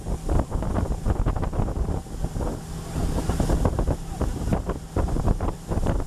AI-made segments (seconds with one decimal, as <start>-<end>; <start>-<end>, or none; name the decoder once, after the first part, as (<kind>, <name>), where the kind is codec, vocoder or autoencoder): 0.0-2.0 (vocoder, BigVGAN v2); 3.7-6.1